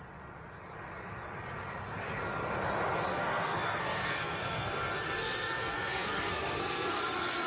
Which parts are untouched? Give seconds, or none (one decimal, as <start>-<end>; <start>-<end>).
0.0-3.1